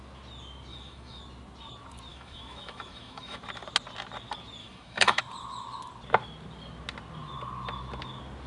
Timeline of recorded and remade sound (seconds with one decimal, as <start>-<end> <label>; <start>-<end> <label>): 0.0-0.7 recorded; 0.7-1.2 remade; 1.2-2.1 recorded; 2.1-3.4 remade; 3.4-4.6 recorded; 4.6-5.2 remade; 5.2-8.5 recorded